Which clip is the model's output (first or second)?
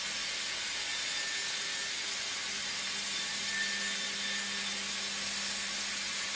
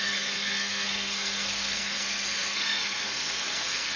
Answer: second